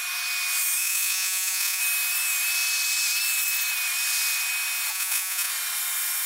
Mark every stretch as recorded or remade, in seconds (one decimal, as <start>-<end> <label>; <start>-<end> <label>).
0.0-0.8 recorded; 0.8-1.8 remade; 1.8-4.9 recorded; 4.9-5.5 remade; 5.5-6.3 recorded